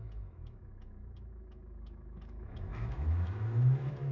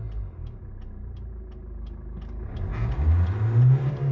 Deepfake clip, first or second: first